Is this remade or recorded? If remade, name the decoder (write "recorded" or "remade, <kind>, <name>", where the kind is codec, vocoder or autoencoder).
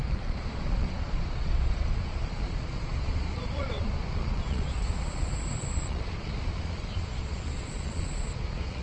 remade, vocoder, Vocos